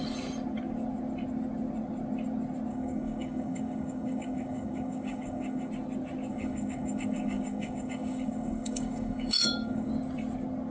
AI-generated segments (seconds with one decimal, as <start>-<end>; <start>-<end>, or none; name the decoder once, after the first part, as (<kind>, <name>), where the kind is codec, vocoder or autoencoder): 2.7-5.7 (codec, DAC); 6.3-9.9